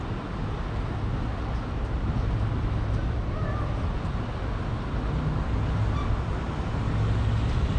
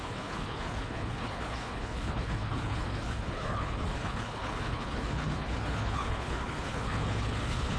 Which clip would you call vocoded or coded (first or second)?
second